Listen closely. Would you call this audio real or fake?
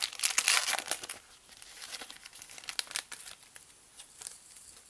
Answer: real